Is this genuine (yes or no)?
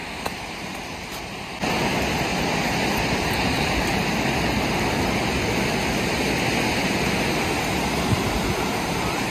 yes